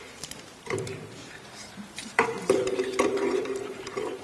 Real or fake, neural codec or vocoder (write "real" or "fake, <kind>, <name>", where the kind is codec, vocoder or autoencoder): fake, vocoder, BigVGAN v2